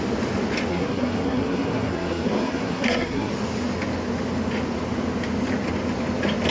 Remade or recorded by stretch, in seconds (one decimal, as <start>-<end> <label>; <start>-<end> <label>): 0.0-0.7 recorded; 0.7-3.3 remade; 3.3-6.5 recorded